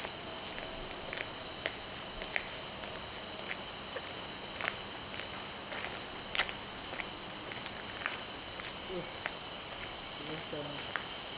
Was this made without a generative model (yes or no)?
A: yes